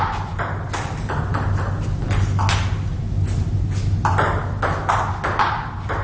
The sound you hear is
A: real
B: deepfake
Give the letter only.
A